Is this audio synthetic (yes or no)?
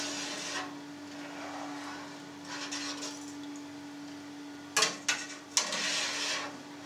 no